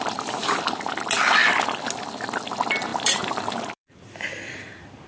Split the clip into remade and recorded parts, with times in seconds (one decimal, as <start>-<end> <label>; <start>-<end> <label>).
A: 0.0-2.9 recorded; 2.9-4.0 remade; 4.0-5.1 recorded